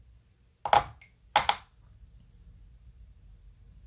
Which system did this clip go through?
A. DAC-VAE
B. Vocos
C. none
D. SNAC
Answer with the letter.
C